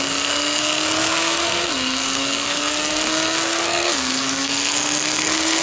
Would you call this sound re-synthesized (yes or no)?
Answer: yes